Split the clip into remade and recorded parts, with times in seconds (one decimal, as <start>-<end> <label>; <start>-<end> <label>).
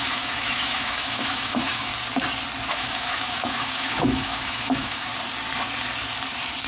0.0-1.9 remade; 1.9-2.7 recorded; 2.7-5.1 remade; 5.1-6.7 recorded